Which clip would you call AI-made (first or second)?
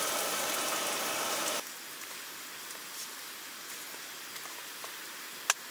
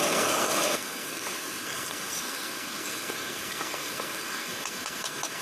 second